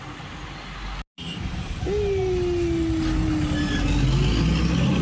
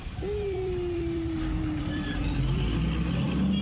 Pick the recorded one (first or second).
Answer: first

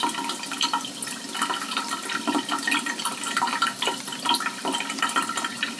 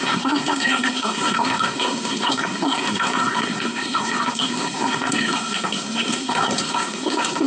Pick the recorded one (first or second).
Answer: first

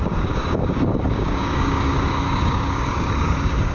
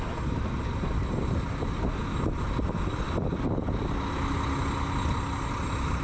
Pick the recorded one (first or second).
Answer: second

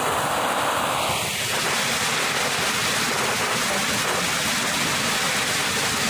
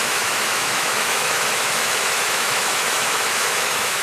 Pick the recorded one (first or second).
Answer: first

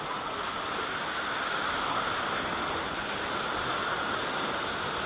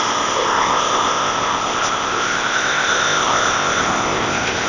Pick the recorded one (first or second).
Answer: first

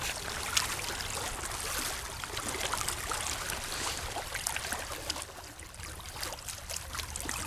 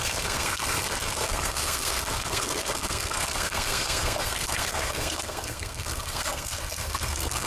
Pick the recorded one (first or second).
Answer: first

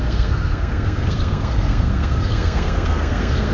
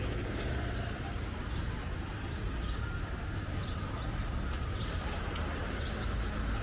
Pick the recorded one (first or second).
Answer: second